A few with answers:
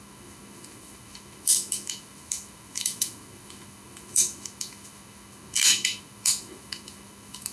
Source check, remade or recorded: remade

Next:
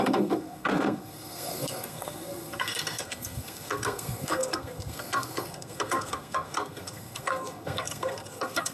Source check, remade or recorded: remade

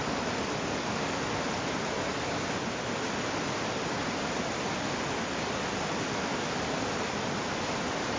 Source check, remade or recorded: recorded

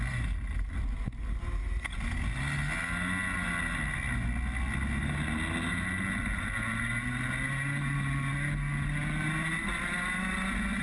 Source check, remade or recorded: recorded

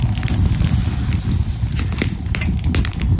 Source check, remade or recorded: recorded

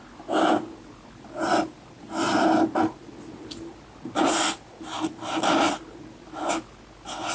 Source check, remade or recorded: recorded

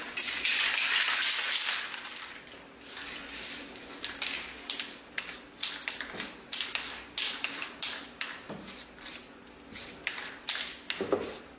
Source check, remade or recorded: recorded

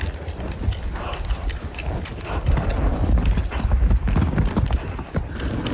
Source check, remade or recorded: recorded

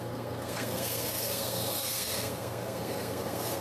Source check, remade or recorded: remade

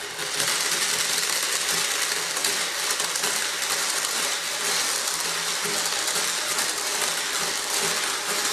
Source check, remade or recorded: recorded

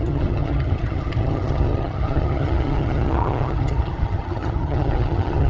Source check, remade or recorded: remade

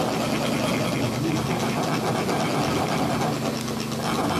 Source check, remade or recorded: recorded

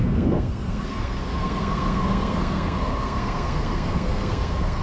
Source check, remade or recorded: remade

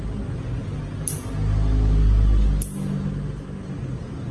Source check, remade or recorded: recorded